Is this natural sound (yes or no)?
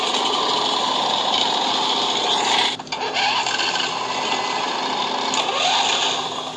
yes